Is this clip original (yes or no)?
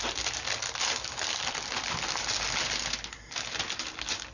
yes